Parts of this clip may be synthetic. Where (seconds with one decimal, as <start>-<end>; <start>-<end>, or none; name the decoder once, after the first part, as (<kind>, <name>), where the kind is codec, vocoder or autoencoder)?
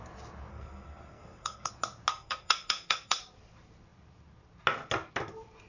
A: 0.5-1.7 (codec, SNAC); 2.1-3.2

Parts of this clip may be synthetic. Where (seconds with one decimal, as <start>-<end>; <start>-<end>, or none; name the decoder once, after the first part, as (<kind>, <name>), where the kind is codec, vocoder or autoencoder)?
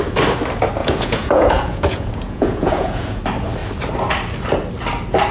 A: 0.8-3.2 (vocoder, Vocos)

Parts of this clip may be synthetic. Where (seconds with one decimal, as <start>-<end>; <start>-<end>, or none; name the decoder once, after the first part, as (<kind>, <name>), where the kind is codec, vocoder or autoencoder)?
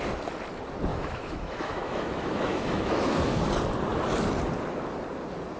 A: 0.9-3.4 (autoencoder, DAC-VAE)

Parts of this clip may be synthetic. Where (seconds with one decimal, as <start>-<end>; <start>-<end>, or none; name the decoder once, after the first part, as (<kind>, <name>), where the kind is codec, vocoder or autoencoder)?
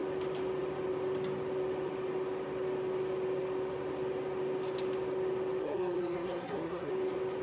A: 5.6-6.9 (codec, SNAC)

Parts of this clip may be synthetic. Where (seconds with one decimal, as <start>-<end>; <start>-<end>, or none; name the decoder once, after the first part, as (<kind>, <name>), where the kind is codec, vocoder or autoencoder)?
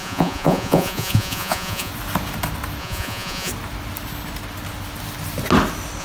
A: 0.0-1.9 (vocoder, Vocos); 2.8-3.5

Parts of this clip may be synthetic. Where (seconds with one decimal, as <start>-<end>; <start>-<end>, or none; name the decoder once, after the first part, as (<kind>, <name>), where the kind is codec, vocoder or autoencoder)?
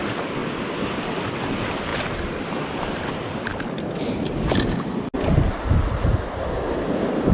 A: none